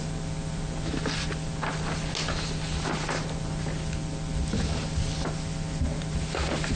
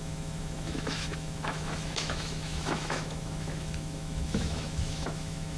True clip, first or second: first